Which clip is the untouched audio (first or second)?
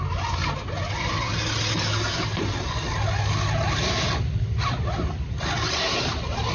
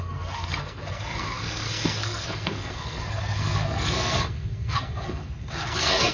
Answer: first